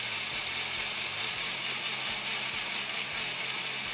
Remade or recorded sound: recorded